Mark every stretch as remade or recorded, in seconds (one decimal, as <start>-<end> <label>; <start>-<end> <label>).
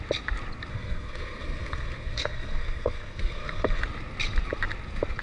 0.0-0.7 recorded; 0.7-3.8 remade; 3.8-5.2 recorded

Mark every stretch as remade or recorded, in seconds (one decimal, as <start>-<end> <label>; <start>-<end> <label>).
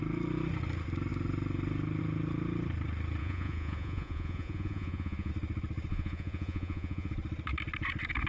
0.0-3.2 recorded; 3.2-5.3 remade; 5.3-5.9 recorded; 5.9-7.1 remade; 7.1-8.3 recorded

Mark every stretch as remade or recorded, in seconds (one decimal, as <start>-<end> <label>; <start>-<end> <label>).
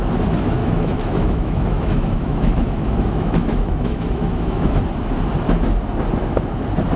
0.0-0.6 recorded; 0.6-4.8 remade; 4.8-7.0 recorded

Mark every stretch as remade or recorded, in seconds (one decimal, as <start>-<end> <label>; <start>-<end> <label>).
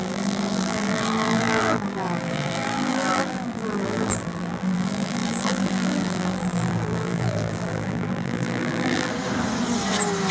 0.0-9.1 remade; 9.1-10.3 recorded